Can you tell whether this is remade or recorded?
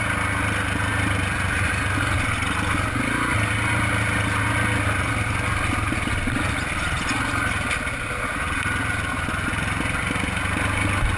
recorded